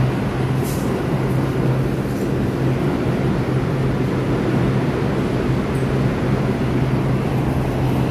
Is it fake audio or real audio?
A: real